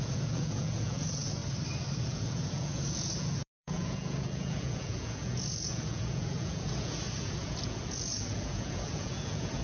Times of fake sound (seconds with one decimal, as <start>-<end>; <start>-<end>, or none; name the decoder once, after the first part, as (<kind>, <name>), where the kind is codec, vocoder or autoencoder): 0.0-1.4 (vocoder, Vocos); 2.0-9.6